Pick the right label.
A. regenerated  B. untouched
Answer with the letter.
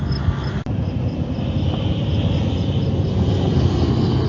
B